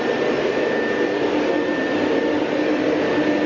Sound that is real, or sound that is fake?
real